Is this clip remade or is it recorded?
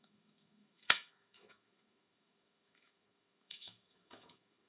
remade